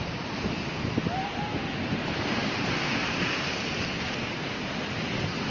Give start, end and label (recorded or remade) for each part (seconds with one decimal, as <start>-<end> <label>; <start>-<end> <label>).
0.0-5.5 recorded